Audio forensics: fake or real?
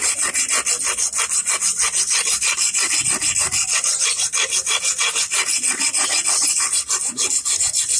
real